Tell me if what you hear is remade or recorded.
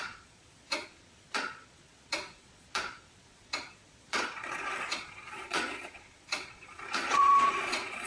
remade